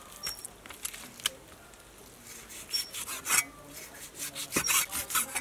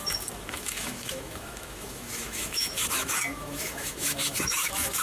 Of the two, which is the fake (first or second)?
second